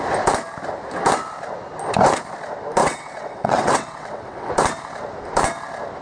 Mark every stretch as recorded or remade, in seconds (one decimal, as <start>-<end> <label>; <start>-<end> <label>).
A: 0.0-2.8 recorded; 2.8-4.5 remade; 4.5-6.0 recorded